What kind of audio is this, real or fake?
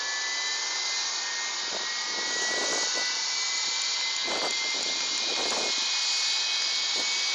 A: real